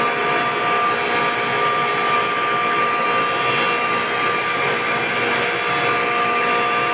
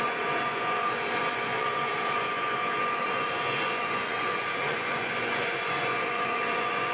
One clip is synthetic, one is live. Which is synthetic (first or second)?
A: second